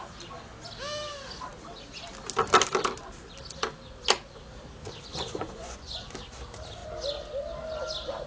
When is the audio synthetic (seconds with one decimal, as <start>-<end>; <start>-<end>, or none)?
5.1-6.0